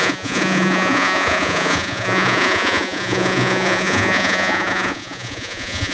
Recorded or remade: remade